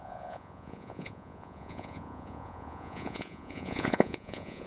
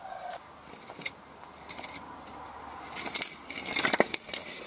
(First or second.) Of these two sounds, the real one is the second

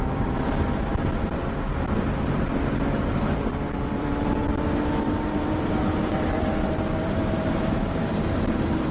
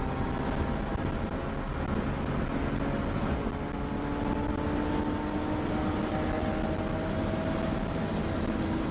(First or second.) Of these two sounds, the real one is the second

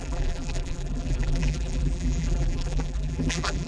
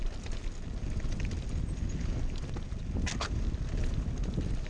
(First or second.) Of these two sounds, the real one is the second